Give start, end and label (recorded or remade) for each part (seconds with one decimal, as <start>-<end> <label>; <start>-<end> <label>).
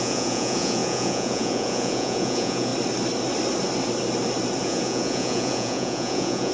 0.0-2.7 remade; 2.7-4.6 recorded; 4.6-6.5 remade